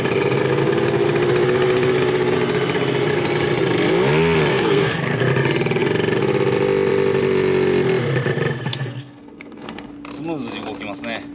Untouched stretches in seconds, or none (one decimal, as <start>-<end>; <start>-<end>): 0.0-4.5; 5.2-8.7; 9.9-11.3